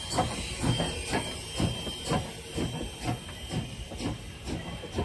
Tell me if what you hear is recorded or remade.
recorded